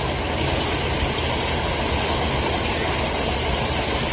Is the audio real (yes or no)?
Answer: yes